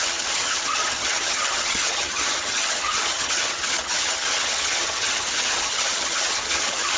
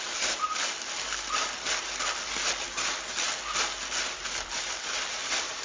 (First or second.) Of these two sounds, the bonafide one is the second